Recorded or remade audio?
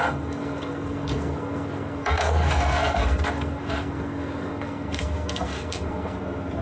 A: remade